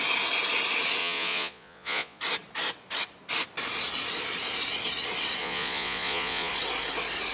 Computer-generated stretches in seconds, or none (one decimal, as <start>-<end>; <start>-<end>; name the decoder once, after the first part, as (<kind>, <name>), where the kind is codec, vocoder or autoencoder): 1.0-2.2 (vocoder, Vocos); 5.4-6.5